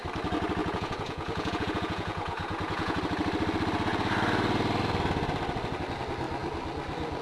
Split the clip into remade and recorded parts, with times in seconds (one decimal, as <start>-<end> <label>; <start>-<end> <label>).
0.0-0.6 recorded; 0.6-3.0 remade; 3.0-7.2 recorded